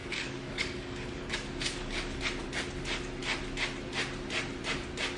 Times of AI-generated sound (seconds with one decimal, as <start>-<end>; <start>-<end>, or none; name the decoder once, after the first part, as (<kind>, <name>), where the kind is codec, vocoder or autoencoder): 0.0-2.2 (codec, DAC)